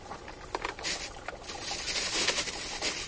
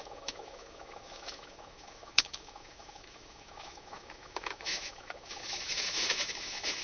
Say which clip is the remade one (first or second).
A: second